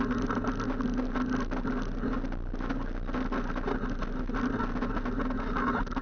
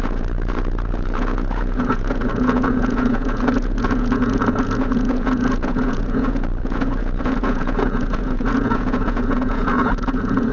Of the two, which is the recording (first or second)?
first